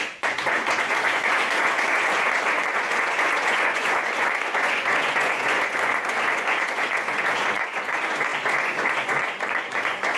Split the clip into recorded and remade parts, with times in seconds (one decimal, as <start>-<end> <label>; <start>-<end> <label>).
0.0-10.2 remade

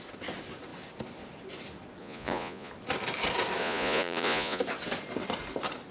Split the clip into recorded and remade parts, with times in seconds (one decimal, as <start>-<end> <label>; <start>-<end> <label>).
0.0-2.0 recorded; 2.0-2.7 remade; 2.7-3.6 recorded; 3.6-4.6 remade; 4.6-5.9 recorded

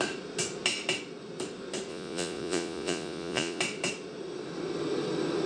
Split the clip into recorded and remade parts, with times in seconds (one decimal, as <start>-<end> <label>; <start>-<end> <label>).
0.0-1.9 recorded; 1.9-3.6 remade; 3.6-5.5 recorded

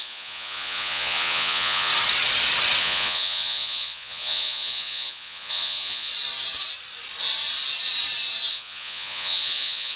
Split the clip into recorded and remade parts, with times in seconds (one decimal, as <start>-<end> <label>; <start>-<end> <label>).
0.0-1.9 remade; 1.9-2.8 recorded; 2.8-6.1 remade; 6.1-8.5 recorded; 8.5-10.0 remade

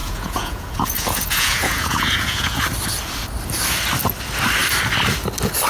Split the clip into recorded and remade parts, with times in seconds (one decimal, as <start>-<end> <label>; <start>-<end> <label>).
0.0-2.6 remade; 2.6-5.7 recorded

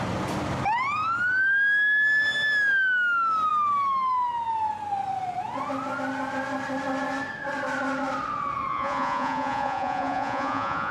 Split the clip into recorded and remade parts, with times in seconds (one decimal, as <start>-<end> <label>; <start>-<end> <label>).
0.0-8.7 recorded; 8.7-10.9 remade

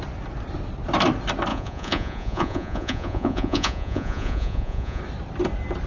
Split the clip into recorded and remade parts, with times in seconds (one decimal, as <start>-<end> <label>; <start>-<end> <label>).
0.0-1.5 recorded; 1.5-5.0 remade; 5.0-5.9 recorded

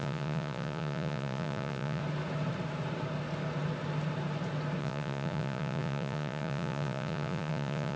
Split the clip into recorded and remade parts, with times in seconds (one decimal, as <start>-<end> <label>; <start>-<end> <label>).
0.0-2.0 remade; 2.0-4.8 recorded; 4.8-8.0 remade